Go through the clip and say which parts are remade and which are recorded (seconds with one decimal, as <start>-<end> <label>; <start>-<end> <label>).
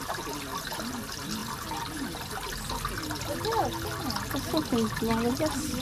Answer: 0.0-5.8 recorded